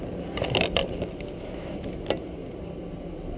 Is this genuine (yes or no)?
yes